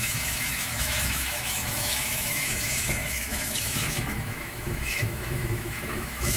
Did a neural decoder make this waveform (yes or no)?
yes